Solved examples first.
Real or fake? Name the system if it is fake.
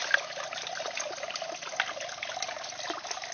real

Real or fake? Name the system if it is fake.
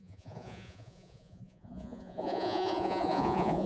fake, vocoder, Vocos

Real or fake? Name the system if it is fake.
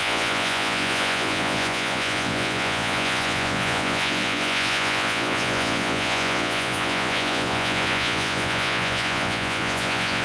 fake, vocoder, Vocos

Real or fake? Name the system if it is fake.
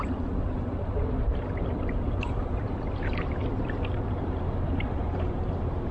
fake, vocoder, BigVGAN v2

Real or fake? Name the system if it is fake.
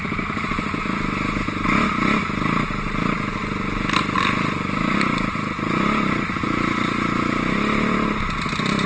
real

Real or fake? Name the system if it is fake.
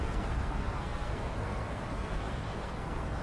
fake, codec, SNAC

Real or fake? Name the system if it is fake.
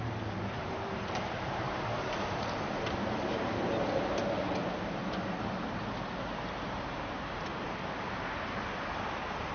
fake, vocoder, BigVGAN v2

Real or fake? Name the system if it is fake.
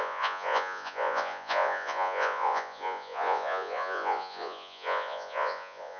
fake, vocoder, Vocos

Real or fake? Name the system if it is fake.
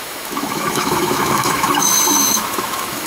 fake, autoencoder, DAC-VAE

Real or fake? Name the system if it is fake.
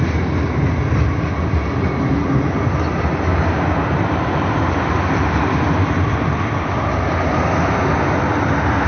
real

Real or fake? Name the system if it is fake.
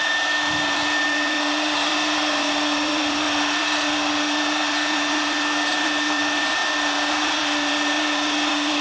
fake, vocoder, BigVGAN v2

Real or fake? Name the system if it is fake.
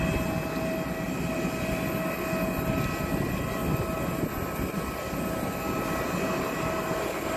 real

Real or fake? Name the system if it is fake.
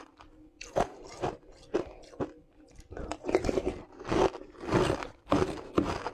real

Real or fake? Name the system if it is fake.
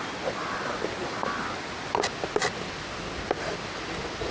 real